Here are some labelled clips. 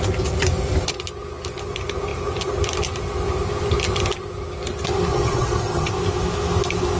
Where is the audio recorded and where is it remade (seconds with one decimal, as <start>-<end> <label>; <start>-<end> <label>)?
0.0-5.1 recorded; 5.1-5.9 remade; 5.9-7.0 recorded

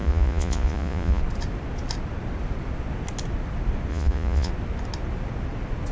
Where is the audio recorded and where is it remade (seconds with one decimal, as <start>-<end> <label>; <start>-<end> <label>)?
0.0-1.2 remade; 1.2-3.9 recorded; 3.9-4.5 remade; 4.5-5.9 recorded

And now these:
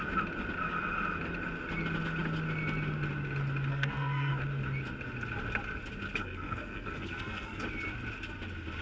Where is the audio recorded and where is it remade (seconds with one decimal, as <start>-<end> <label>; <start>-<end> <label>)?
0.0-3.7 recorded; 3.7-4.3 remade; 4.3-6.2 recorded; 6.2-7.6 remade; 7.6-8.8 recorded

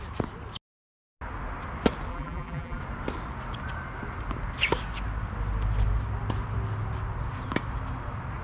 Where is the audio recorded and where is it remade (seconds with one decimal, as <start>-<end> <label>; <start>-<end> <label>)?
0.0-2.1 recorded; 2.1-2.8 remade; 2.8-8.4 recorded